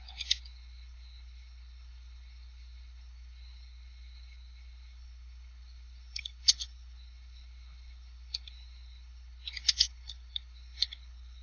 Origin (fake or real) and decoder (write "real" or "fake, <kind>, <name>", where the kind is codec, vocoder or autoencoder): fake, codec, HILCodec